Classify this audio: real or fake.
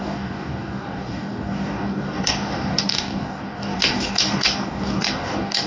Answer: fake